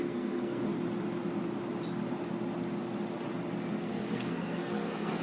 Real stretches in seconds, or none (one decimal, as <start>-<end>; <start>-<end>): 0.7-3.8